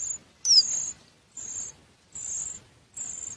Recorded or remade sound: recorded